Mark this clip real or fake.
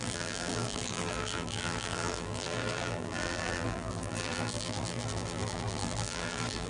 fake